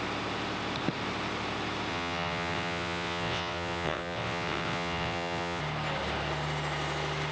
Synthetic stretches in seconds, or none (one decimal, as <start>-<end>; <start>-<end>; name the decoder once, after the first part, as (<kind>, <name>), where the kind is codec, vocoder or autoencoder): 1.9-5.6 (vocoder, WaveNeXt)